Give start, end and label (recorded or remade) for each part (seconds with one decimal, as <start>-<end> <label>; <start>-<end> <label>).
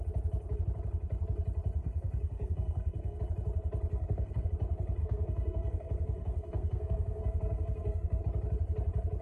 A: 0.0-1.8 recorded; 1.8-3.2 remade; 3.2-3.9 recorded; 3.9-4.5 remade; 4.5-5.0 recorded; 5.0-8.2 remade; 8.2-9.2 recorded